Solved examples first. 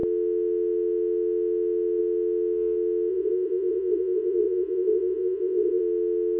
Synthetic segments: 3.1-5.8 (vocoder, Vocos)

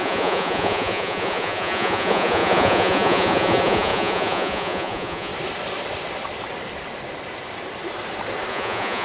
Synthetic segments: 0.0-5.3 (vocoder, Vocos); 8.5-9.0

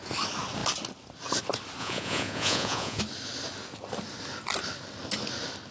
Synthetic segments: 1.8-3.0 (vocoder, Vocos)

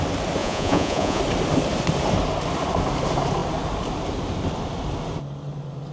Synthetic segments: 0.4-1.2 (vocoder, Vocos)

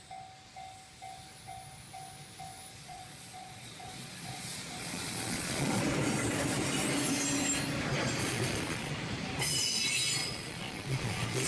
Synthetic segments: 2.7-5.8 (vocoder, Vocos); 8.2-8.9; 10.2-11.5

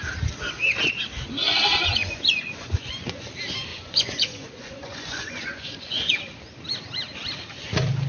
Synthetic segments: 1.4-3.2 (vocoder, Vocos); 3.7-6.1